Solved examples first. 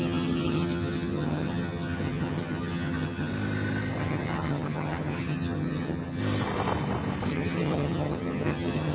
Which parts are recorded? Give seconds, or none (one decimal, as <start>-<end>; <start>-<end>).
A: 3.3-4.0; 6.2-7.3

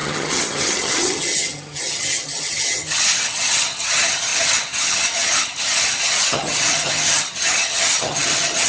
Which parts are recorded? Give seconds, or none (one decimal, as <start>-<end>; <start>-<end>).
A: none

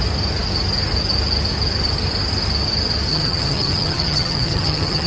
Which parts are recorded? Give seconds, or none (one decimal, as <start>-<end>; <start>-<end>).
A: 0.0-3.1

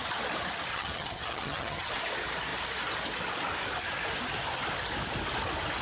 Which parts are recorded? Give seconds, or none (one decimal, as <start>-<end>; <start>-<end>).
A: 0.0-0.7; 1.9-5.8